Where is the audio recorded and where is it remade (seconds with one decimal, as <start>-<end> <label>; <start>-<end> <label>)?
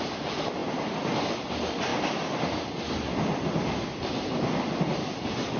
0.0-5.6 recorded